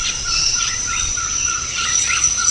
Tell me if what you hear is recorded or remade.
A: remade